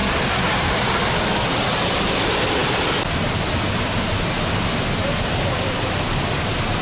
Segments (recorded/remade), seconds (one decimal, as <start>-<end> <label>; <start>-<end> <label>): 0.0-6.8 recorded